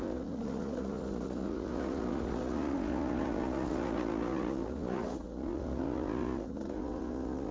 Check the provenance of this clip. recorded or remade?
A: remade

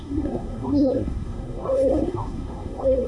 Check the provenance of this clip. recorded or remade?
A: remade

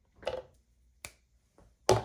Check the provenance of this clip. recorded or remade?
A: recorded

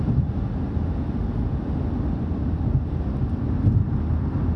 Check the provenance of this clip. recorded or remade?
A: recorded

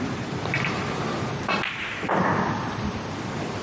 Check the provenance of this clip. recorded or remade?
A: recorded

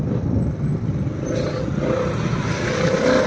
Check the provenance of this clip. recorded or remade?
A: recorded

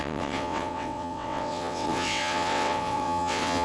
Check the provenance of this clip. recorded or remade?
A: remade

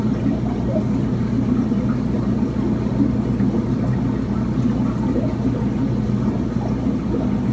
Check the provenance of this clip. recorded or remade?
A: recorded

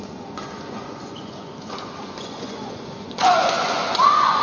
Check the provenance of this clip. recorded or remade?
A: remade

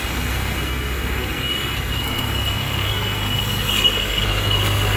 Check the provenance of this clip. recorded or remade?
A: remade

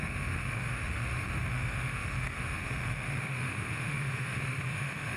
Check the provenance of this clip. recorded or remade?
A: remade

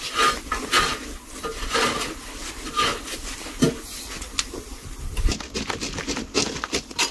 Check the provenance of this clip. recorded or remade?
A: recorded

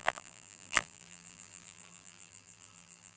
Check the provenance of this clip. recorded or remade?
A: remade